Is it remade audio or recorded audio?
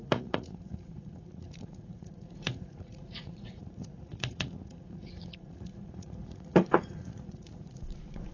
remade